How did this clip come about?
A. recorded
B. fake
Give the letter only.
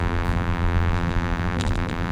B